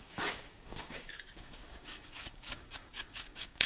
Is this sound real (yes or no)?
no